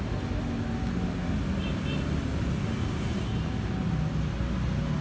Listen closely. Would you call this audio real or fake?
real